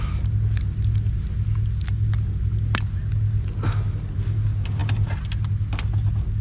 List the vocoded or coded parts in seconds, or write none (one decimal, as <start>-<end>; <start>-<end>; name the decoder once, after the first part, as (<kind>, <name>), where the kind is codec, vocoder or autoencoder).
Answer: none